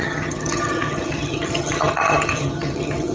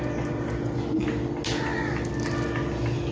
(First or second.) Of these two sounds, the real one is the second